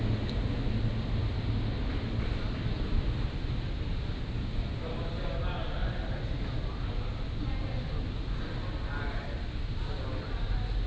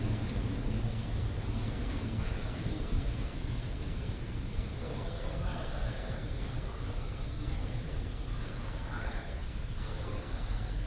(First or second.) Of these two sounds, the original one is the first